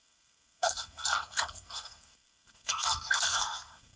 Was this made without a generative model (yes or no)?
no